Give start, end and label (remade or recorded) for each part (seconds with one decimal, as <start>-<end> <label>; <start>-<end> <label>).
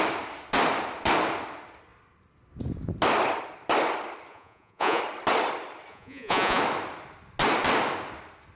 0.0-4.3 recorded; 4.3-5.0 remade; 5.0-5.9 recorded; 5.9-6.6 remade; 6.6-8.6 recorded